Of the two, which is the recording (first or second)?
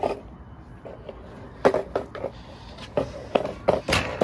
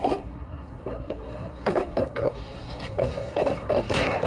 first